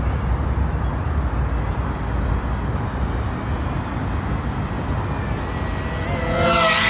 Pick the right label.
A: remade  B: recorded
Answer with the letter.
B